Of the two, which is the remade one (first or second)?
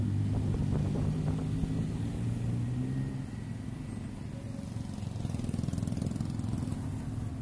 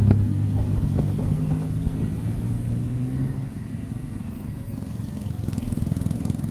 second